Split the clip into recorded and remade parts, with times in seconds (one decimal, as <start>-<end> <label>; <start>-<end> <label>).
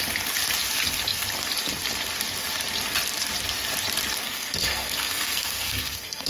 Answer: 0.0-4.2 recorded; 4.2-6.3 remade